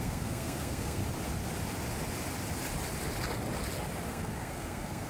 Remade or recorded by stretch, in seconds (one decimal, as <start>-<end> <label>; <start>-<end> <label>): 0.0-1.0 remade; 1.0-4.1 recorded; 4.1-5.1 remade